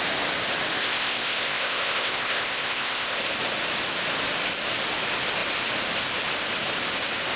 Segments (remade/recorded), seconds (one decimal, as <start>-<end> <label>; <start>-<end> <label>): 0.0-0.8 recorded; 0.8-3.2 remade; 3.2-7.4 recorded